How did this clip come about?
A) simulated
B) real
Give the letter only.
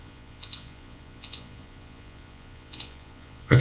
A